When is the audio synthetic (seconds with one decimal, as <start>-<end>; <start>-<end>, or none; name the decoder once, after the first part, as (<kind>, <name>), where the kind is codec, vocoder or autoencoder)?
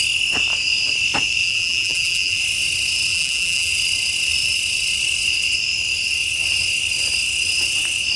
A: 1.4-2.4 (vocoder, BigVGAN v2); 3.1-3.7